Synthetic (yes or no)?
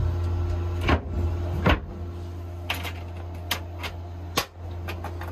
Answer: no